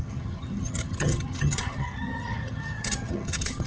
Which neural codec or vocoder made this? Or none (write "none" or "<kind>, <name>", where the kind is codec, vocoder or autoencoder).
vocoder, HiFi-GAN